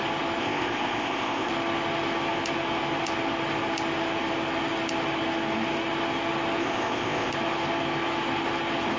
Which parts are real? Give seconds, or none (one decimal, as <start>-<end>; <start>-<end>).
0.0-0.4; 1.5-6.6; 7.3-9.0